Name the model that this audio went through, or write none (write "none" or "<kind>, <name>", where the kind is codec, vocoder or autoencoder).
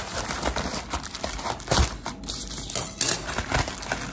none